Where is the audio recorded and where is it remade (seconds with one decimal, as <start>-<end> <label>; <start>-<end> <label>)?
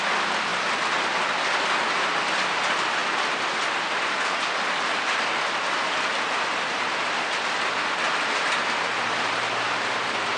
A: 0.0-10.4 recorded